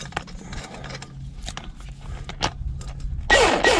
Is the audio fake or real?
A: real